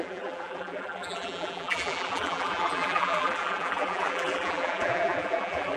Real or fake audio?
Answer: fake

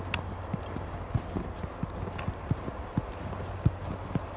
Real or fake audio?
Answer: real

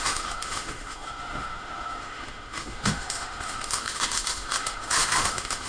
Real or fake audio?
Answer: fake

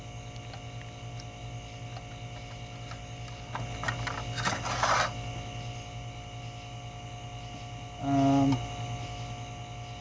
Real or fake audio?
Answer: real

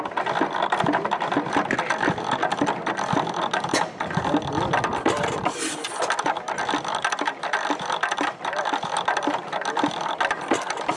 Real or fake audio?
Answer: real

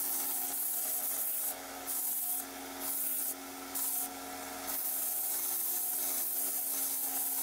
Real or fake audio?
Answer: real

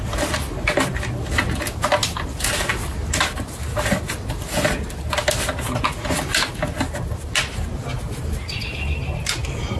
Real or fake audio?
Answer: real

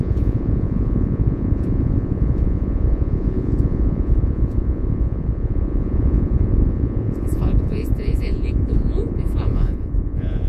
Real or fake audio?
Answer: fake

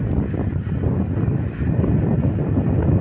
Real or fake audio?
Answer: real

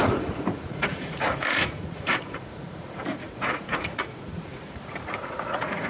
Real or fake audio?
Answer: fake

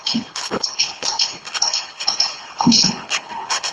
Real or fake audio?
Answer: fake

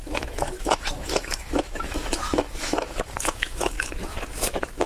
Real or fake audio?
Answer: fake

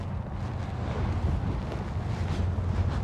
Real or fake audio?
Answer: real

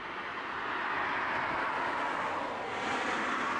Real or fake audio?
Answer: real